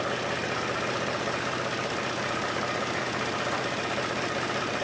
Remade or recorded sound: recorded